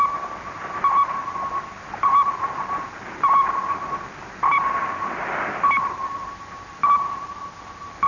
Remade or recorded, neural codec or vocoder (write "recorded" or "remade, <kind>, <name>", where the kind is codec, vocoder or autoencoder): recorded